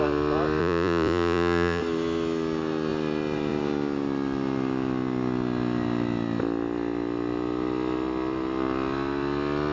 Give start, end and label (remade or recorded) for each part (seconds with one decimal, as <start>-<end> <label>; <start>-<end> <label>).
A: 0.0-0.6 recorded; 0.6-1.8 remade; 1.8-9.7 recorded